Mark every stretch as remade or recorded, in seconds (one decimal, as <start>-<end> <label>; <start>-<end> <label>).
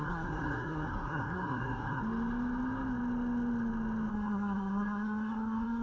0.0-2.0 remade; 2.0-4.1 recorded; 4.1-5.8 remade